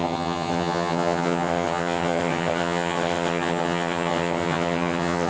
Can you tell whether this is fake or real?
fake